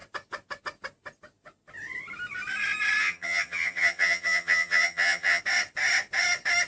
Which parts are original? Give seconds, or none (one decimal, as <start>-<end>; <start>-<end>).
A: 0.0-3.0; 5.4-6.7